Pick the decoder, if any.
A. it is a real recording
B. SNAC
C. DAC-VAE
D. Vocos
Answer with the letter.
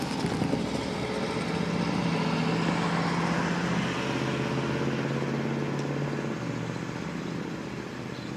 A